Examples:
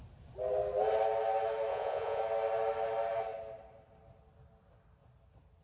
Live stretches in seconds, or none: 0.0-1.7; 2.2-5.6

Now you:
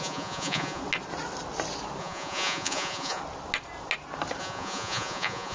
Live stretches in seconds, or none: 0.8-2.0; 3.2-4.4

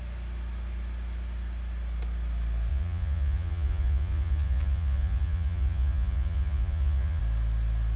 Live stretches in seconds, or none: 0.0-2.7; 7.2-8.0

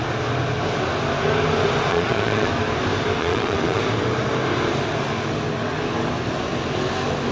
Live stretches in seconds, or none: 0.0-1.9; 2.5-3.2; 3.8-7.3

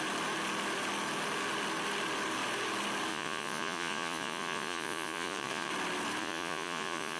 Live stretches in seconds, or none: 0.0-3.1; 5.7-6.2